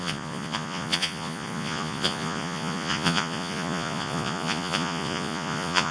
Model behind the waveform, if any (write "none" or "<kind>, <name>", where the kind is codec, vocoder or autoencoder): vocoder, Vocos